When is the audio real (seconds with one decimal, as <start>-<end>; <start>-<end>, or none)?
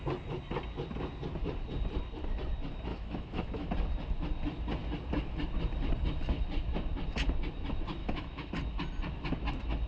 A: 0.0-2.9; 3.7-8.0; 8.5-9.9